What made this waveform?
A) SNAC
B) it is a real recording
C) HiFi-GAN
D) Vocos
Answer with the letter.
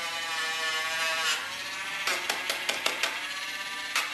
B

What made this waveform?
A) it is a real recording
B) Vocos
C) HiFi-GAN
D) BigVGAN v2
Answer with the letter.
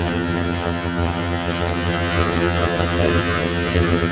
C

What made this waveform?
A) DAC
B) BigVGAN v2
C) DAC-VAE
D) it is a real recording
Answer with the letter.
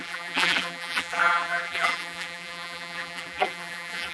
B